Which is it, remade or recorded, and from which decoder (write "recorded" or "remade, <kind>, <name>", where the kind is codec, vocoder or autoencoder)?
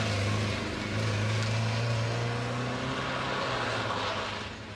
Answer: recorded